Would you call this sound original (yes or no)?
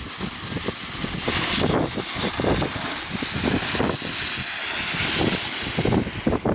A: yes